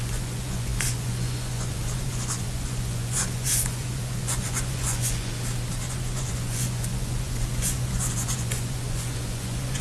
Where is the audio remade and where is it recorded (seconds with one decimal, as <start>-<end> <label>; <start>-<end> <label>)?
0.0-5.3 remade; 5.3-5.9 recorded; 5.9-9.8 remade